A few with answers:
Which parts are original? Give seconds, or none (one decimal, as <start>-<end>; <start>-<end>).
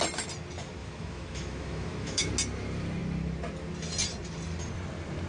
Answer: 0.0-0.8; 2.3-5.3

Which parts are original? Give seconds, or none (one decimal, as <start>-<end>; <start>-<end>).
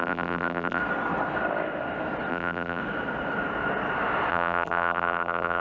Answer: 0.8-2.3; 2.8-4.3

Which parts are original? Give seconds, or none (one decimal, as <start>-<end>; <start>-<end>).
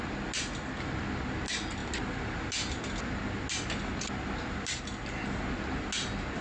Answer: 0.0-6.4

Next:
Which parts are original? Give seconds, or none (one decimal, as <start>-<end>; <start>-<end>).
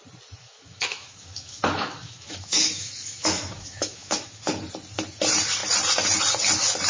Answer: 0.0-0.4; 4.5-6.9